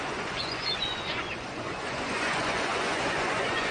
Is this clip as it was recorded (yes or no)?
no